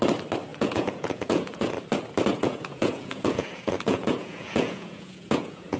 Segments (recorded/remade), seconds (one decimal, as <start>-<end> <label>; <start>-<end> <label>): 0.0-0.5 recorded; 0.5-1.7 remade; 1.7-2.3 recorded; 2.3-5.8 remade